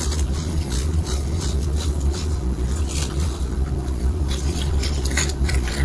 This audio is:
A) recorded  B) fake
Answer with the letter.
B